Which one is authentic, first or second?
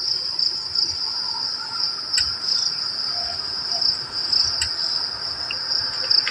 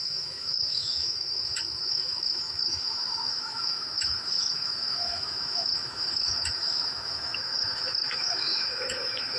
first